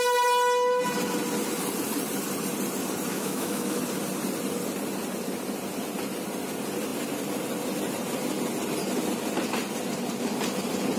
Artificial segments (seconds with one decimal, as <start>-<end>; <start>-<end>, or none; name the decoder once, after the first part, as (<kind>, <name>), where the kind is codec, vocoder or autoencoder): 3.1-3.8 (autoencoder, DAC-VAE)